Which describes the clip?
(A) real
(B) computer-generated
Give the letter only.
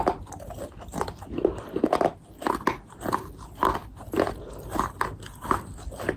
A